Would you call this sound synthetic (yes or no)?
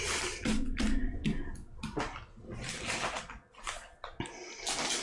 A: no